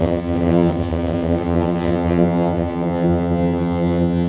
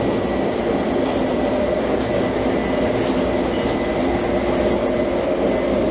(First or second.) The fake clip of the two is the first